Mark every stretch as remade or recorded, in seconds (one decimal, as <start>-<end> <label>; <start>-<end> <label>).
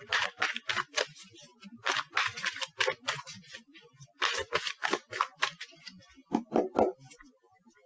0.0-7.9 recorded